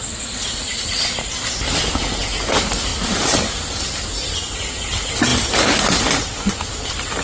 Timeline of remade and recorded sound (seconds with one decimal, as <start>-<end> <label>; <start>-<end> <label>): 0.0-7.2 recorded